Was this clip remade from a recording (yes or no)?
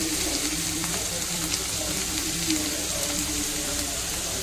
yes